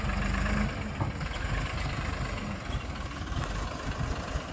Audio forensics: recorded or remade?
recorded